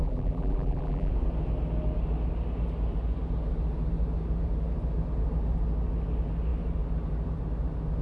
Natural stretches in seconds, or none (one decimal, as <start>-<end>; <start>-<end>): 1.1-8.0